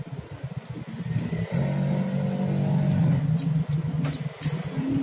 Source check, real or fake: real